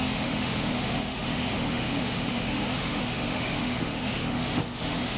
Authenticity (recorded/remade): remade